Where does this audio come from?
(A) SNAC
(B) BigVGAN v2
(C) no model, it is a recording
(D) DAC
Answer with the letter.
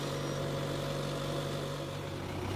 C